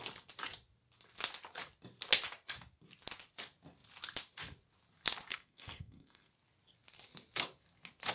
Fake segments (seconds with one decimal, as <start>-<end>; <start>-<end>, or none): 5.3-6.3